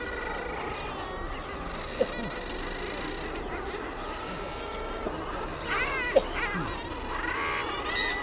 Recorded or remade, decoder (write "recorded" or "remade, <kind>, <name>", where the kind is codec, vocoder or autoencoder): recorded